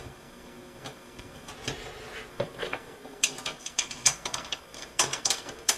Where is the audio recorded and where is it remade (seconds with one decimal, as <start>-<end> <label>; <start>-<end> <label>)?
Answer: 0.0-1.5 remade; 1.5-2.3 recorded; 2.3-5.8 remade